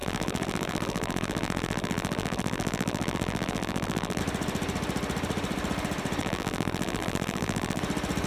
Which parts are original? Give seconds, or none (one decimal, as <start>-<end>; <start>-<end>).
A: 4.2-6.2; 7.8-8.3